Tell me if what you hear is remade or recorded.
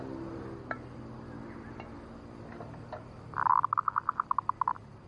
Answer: recorded